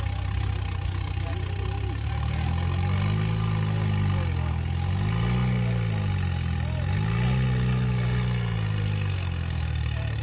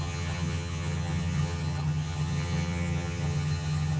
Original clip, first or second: first